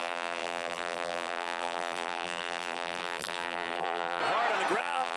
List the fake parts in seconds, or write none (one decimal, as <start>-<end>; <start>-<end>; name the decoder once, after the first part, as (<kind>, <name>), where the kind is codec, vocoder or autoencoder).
0.0-4.2 (vocoder, BigVGAN v2); 4.8-5.2

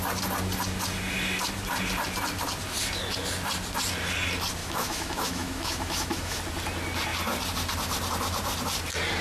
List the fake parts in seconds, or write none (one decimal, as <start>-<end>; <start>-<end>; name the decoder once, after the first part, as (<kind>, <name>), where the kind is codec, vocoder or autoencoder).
4.6-6.4 (autoencoder, DAC-VAE)

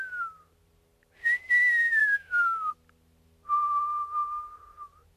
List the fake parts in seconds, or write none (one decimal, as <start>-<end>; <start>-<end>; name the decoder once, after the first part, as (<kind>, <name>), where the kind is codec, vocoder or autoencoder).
2.0-2.7 (autoencoder, DAC-VAE)

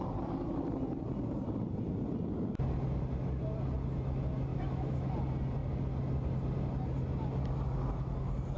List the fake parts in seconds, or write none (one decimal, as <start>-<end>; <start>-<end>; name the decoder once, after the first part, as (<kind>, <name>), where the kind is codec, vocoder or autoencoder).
4.5-5.1 (autoencoder, DAC-VAE)

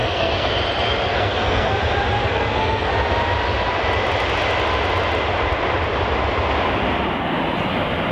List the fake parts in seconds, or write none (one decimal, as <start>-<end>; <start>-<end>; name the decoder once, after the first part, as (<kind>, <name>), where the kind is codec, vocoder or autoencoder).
0.0-0.5 (codec, SNAC); 1.1-1.8; 2.2-2.9

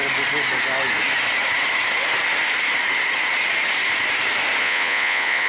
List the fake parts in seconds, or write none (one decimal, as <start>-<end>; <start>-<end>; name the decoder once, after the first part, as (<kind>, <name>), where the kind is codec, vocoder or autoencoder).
4.6-5.5 (vocoder, Vocos)

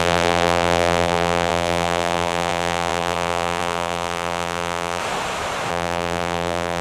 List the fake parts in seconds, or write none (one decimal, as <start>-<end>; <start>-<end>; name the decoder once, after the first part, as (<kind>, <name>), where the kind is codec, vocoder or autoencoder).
0.0-5.0 (vocoder, BigVGAN v2); 5.7-6.8

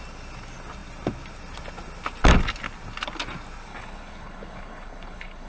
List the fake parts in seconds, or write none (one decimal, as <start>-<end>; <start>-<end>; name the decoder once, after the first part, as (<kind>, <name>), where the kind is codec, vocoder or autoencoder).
3.7-5.5 (codec, HILCodec)